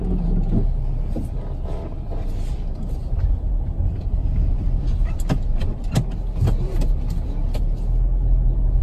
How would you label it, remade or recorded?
recorded